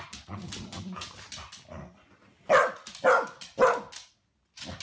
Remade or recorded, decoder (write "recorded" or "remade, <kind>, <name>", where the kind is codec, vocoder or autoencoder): recorded